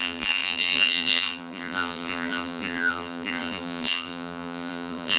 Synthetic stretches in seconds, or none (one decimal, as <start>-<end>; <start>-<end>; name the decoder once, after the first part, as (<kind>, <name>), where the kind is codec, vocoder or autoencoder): 0.0-5.2 (vocoder, BigVGAN v2)